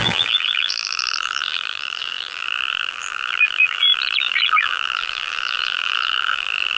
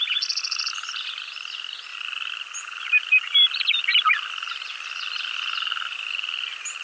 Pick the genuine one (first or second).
second